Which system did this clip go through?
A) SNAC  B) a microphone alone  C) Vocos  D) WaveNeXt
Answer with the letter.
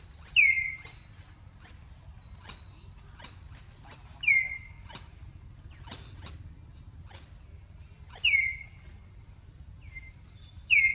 B